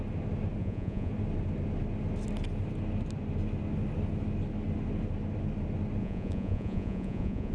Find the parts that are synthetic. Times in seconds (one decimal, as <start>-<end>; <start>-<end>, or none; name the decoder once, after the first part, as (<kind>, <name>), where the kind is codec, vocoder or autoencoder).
0.6-1.1 (vocoder, Vocos); 6.0-7.5